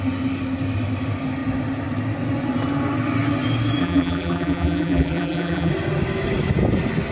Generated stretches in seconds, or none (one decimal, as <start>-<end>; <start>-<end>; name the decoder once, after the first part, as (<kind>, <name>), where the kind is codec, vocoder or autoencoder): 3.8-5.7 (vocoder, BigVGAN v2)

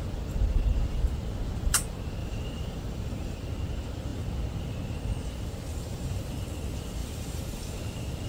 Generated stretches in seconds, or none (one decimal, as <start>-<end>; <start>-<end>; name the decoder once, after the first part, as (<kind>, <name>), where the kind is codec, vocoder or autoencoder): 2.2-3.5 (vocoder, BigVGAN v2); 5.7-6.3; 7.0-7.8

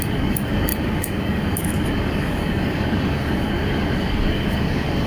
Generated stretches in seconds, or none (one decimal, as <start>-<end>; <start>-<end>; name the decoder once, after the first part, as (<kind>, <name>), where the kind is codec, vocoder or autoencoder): 0.0-5.1 (codec, DAC)